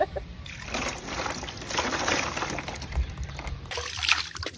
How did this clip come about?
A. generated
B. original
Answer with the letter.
B